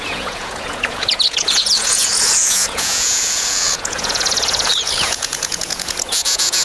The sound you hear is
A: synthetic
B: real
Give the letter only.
A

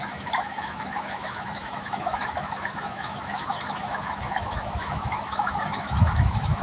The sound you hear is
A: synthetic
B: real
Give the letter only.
A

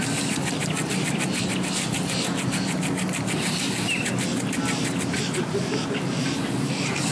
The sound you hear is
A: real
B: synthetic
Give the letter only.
A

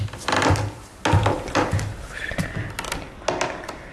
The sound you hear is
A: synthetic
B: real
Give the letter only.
B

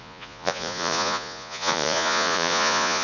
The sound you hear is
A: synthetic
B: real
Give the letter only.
A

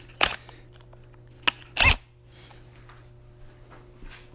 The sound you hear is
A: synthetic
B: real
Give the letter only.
B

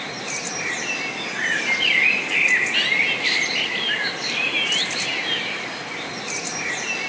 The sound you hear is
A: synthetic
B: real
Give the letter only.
B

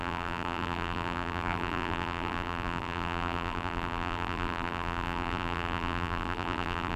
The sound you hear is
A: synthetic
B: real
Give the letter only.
A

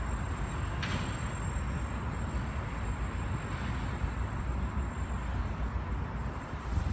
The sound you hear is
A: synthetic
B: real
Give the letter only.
B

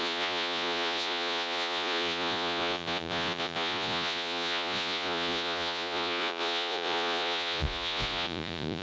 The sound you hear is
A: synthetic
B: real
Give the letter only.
A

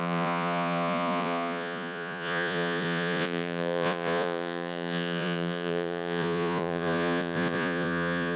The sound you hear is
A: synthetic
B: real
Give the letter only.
A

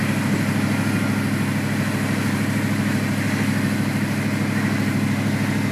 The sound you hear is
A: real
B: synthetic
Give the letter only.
A